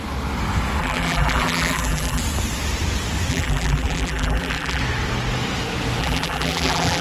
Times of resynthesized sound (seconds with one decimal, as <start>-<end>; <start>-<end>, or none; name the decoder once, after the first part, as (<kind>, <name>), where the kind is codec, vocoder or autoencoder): 0.8-2.2 (vocoder, BigVGAN v2); 3.3-4.8; 6.0-7.0